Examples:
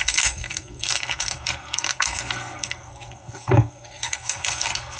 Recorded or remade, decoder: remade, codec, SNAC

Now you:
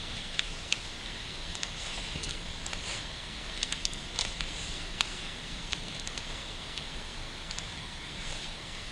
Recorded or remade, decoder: remade, codec, SNAC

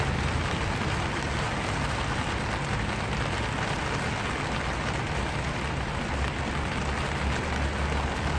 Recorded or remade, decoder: recorded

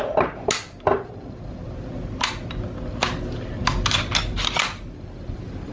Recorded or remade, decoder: recorded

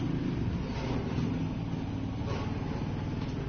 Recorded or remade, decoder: recorded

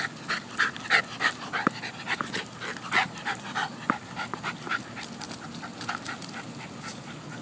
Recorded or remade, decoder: recorded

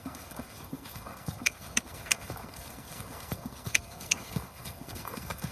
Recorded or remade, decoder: remade, codec, SNAC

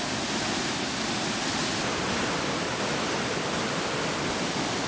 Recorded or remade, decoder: recorded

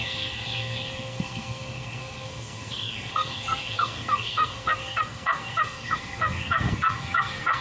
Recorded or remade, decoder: remade, codec, SNAC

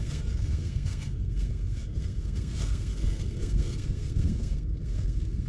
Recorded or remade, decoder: remade, codec, SNAC